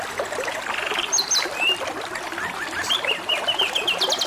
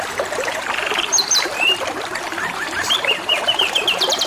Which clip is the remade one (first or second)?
second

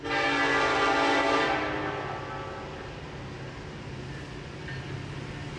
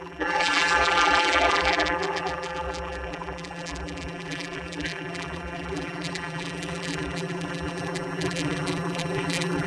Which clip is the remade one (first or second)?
second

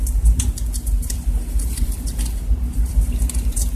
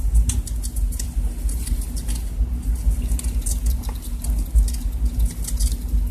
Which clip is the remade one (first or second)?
first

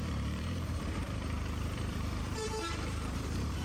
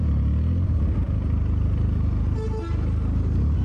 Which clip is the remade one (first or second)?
first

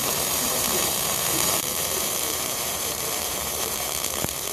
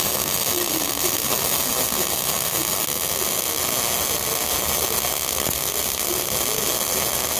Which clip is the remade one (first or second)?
first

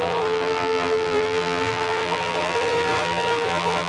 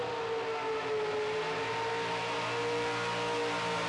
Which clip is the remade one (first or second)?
first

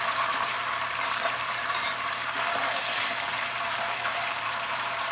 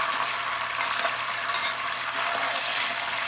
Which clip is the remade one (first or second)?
first